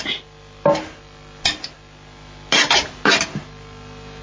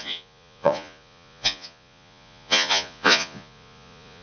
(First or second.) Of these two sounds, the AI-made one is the second